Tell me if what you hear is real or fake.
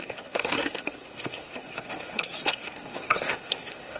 fake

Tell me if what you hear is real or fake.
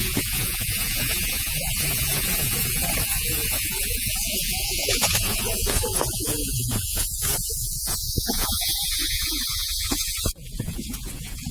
fake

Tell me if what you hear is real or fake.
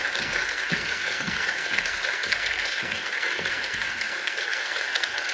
fake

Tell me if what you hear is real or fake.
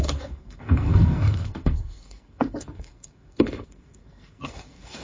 fake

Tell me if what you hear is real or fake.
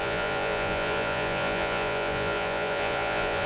fake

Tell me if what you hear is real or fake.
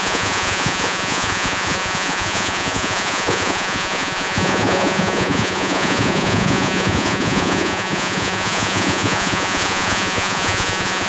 fake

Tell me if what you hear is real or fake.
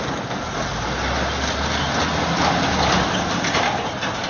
real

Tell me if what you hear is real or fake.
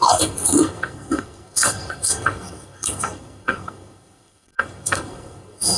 fake